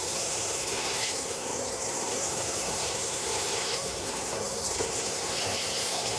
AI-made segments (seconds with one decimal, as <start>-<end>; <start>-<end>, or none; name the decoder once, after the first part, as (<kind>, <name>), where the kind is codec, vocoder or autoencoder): 0.0-6.2 (codec, SNAC)